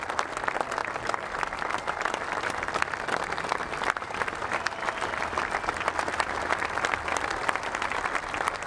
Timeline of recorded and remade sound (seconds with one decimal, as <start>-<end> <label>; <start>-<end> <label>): 0.0-8.7 recorded

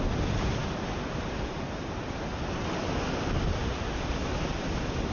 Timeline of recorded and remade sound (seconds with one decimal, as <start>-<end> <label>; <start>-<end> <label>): 0.0-5.1 recorded

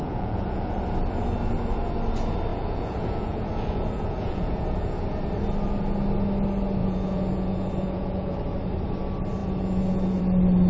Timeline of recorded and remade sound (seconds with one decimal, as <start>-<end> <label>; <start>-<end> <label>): 0.0-0.7 remade; 0.7-2.5 recorded; 2.5-5.0 remade; 5.0-6.8 recorded; 6.8-8.4 remade; 8.4-9.4 recorded; 9.4-10.2 remade; 10.2-10.7 recorded

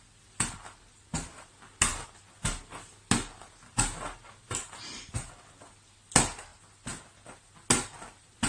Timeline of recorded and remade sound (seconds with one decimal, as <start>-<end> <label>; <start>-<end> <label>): 0.0-8.5 recorded